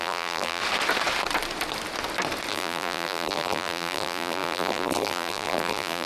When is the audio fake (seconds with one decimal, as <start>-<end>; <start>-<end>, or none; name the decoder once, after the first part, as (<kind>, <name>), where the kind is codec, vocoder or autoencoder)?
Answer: 0.0-0.6 (vocoder, BigVGAN v2); 2.5-6.1

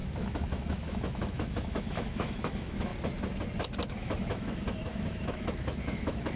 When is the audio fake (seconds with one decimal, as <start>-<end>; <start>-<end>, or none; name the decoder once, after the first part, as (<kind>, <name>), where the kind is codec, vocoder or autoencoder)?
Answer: 0.0-2.9 (autoencoder, DAC-VAE); 3.9-6.4

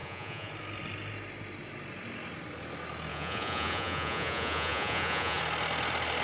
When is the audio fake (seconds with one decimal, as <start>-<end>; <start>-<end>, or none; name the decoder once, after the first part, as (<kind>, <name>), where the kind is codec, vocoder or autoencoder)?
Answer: 0.0-0.5 (vocoder, Vocos); 3.1-5.4

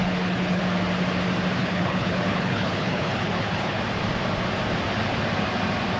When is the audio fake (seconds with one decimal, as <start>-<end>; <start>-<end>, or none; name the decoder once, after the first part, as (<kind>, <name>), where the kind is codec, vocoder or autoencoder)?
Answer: 0.0-0.6 (codec, HILCodec); 1.6-3.8

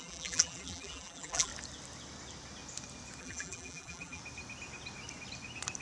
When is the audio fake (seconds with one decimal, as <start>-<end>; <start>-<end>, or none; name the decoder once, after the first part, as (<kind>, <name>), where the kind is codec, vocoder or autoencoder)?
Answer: 0.0-1.5 (vocoder, BigVGAN v2); 3.2-4.2

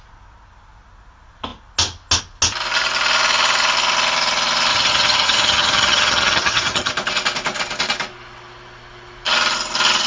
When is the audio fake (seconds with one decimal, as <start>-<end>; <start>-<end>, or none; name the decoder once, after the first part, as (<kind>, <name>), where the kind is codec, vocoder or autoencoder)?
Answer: 4.7-6.9 (vocoder, HiFi-GAN)

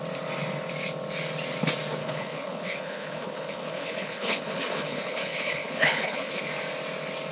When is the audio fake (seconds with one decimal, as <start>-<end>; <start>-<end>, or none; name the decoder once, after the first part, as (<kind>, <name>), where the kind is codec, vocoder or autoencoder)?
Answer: 2.0-6.4 (codec, HILCodec)

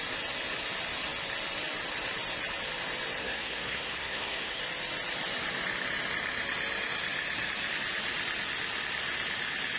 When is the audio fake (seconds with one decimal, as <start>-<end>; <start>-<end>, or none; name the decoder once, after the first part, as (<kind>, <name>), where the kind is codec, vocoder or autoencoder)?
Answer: 3.2-4.6 (codec, SNAC)